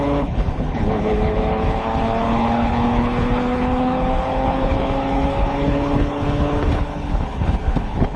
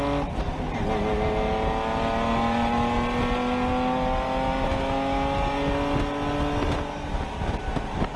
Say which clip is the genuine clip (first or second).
second